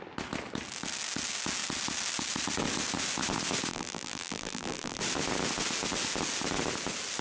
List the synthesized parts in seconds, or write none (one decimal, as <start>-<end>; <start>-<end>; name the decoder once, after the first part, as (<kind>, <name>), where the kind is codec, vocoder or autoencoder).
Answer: 3.7-5.0 (vocoder, BigVGAN v2)

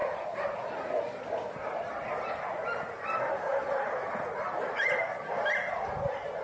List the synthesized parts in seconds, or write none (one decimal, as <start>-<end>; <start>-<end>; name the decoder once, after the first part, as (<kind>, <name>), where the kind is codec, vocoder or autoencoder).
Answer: 3.5-5.0 (vocoder, BigVGAN v2)